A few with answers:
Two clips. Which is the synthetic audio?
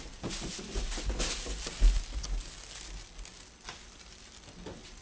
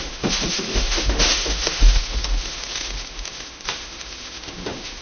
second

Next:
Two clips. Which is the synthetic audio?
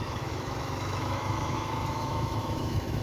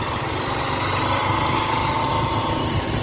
first